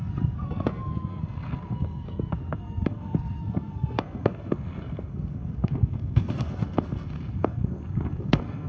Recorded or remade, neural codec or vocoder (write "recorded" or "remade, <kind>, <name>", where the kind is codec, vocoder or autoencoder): remade, codec, SNAC